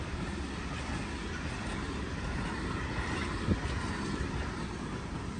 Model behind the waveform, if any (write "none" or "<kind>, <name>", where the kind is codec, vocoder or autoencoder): none